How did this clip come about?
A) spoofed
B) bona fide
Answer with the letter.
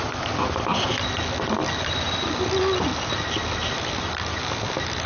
B